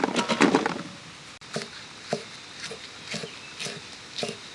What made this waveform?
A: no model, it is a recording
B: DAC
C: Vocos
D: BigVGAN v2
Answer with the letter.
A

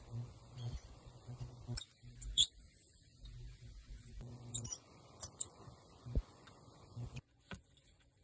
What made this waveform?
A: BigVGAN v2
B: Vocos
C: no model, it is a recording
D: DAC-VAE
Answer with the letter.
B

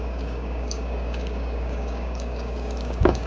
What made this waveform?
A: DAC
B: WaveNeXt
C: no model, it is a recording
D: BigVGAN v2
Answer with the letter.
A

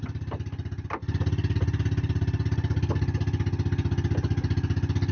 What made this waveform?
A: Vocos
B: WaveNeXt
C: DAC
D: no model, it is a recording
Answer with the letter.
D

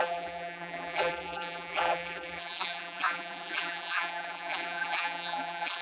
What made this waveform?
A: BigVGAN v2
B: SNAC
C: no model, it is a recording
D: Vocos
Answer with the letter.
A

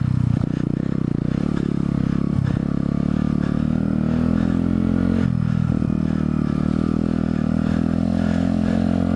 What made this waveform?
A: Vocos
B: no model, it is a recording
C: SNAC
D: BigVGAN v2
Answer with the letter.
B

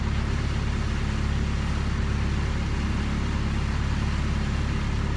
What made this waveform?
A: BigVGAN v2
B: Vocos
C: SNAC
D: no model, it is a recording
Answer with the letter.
D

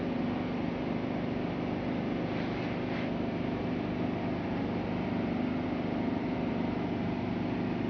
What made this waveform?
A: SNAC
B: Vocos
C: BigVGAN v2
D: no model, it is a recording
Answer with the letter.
D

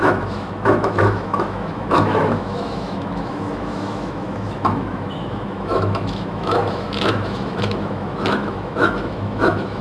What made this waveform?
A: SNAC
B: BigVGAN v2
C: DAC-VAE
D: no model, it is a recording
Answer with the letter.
C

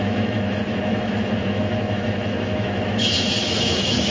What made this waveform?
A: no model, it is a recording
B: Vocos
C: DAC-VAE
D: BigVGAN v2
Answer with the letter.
C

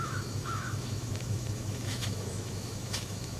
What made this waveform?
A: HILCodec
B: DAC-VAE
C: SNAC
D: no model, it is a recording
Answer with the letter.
B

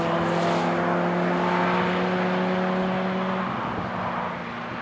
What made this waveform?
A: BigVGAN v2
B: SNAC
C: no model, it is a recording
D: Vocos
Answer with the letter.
C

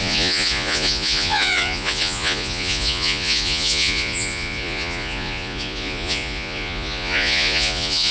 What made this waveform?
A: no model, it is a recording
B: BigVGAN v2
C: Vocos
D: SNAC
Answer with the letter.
C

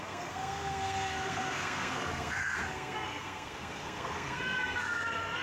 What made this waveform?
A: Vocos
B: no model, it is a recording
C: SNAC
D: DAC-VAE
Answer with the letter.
C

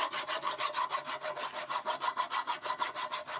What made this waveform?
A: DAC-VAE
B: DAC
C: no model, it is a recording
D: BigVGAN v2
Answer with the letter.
C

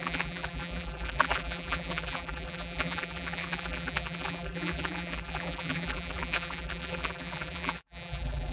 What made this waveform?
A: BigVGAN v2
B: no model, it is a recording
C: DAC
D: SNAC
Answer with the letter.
A